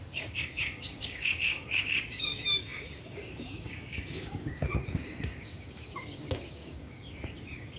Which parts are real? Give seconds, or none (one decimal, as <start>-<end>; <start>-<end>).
none